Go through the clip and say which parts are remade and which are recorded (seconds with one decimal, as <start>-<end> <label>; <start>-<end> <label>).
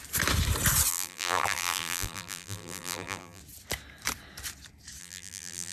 0.0-0.9 recorded; 0.9-3.4 remade; 3.4-5.0 recorded; 5.0-5.7 remade